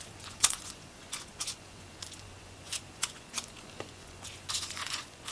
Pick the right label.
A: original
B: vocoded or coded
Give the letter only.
B